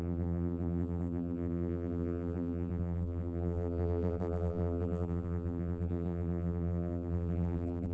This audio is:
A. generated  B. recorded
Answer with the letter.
A